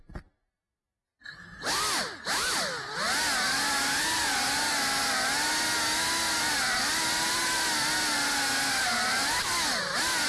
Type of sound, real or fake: real